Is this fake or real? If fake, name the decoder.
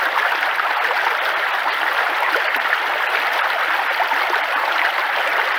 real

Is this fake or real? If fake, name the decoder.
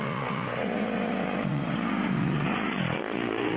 fake, vocoder, Vocos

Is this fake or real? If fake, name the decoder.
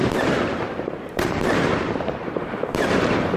fake, vocoder, BigVGAN v2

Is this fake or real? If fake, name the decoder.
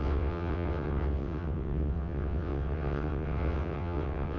fake, vocoder, WaveNeXt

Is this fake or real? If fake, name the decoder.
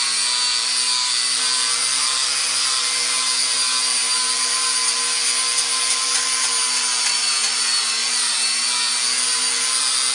real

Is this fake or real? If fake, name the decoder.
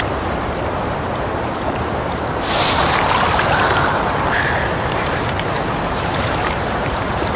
fake, vocoder, BigVGAN v2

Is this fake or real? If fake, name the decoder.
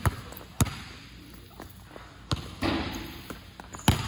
real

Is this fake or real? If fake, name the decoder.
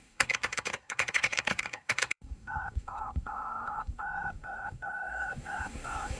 fake, codec, SNAC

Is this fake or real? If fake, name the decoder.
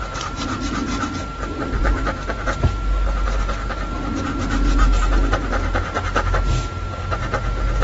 real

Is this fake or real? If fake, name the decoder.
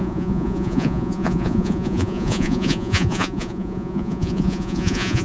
fake, vocoder, Vocos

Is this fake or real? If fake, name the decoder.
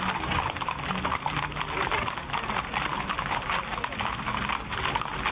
real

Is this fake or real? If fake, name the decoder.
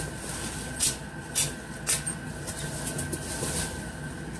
real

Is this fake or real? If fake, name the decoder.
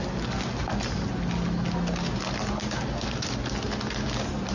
real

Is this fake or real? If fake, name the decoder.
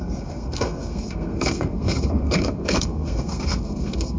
fake, codec, SNAC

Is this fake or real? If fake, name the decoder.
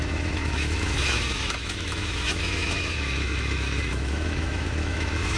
fake, autoencoder, DAC-VAE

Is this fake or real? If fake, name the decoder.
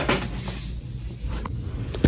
real